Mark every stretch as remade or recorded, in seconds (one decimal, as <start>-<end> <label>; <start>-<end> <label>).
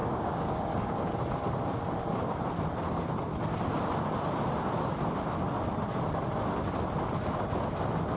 0.0-1.1 remade; 1.1-8.2 recorded